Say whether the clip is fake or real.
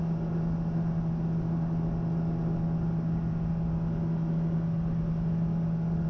real